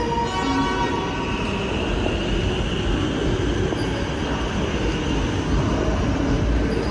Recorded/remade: recorded